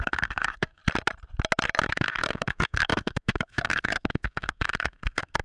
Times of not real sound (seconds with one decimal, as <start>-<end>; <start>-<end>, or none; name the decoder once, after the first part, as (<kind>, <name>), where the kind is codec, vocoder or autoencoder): 0.0-0.8 (codec, SNAC); 1.9-5.4